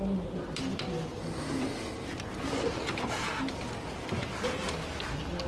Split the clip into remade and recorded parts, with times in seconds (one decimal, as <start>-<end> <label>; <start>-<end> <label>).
0.0-1.1 recorded; 1.1-3.3 remade; 3.3-5.5 recorded